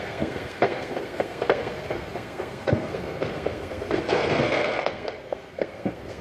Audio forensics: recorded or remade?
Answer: remade